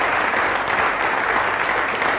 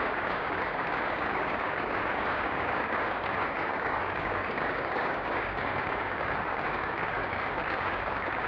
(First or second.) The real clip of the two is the first